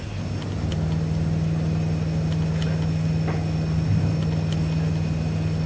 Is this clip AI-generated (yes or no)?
no